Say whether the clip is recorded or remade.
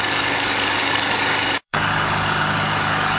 remade